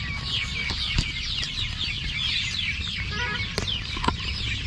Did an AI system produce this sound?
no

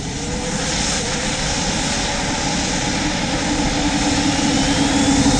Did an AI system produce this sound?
no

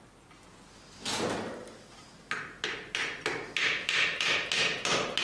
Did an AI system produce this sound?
no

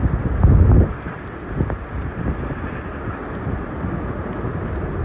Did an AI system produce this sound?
no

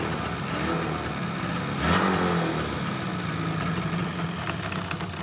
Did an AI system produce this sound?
no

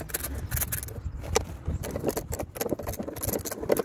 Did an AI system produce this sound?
no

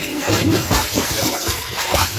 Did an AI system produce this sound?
yes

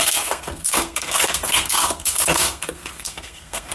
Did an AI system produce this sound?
yes